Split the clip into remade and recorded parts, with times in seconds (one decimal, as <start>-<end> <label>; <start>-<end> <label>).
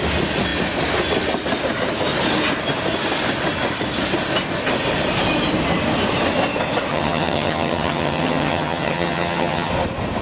0.0-6.9 recorded; 6.9-9.7 remade; 9.7-10.2 recorded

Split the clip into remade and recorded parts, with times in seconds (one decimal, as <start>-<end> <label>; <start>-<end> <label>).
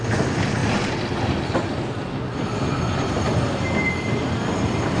0.0-5.0 recorded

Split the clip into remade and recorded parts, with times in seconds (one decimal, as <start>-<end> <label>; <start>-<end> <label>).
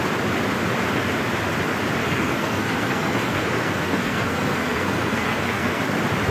0.0-2.0 recorded; 2.0-5.8 remade; 5.8-6.3 recorded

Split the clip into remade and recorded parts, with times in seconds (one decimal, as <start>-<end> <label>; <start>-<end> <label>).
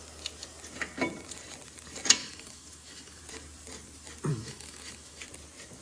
0.0-2.2 recorded; 2.2-3.2 remade; 3.2-4.3 recorded; 4.3-5.2 remade; 5.2-5.8 recorded